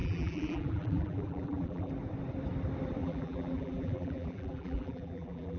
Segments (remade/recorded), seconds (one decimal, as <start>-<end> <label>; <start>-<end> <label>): 0.0-1.9 remade; 1.9-3.0 recorded; 3.0-5.6 remade

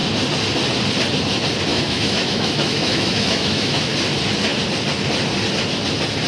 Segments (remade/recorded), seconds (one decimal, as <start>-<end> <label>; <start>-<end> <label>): 0.0-1.7 recorded; 1.7-3.9 remade; 3.9-6.3 recorded

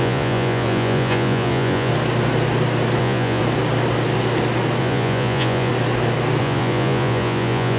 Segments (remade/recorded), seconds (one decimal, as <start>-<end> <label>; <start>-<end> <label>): 0.0-1.9 remade; 1.9-3.0 recorded; 3.0-3.4 remade; 3.4-4.8 recorded; 4.8-5.7 remade; 5.7-6.4 recorded; 6.4-7.8 remade

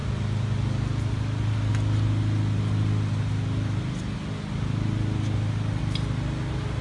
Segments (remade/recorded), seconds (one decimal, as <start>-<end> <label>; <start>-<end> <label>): 0.0-6.8 recorded